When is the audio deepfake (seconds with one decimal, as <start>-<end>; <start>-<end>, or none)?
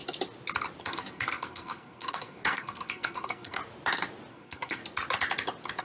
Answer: 0.8-3.6; 4.3-4.8